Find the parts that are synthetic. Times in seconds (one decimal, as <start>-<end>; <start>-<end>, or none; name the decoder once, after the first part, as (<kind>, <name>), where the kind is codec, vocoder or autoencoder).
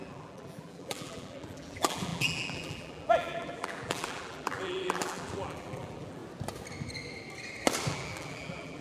0.0-6.2 (vocoder, BigVGAN v2); 7.9-8.8